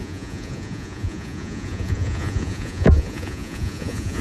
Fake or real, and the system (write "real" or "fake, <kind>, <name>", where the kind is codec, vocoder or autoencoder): fake, vocoder, Vocos